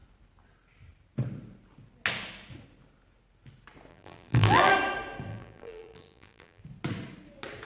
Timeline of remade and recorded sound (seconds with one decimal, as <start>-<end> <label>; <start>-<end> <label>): 0.0-3.9 recorded; 3.9-4.7 remade; 4.7-5.3 recorded; 5.3-6.6 remade; 6.6-7.7 recorded